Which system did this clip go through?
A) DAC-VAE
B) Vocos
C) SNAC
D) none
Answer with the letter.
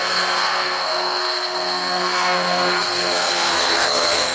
C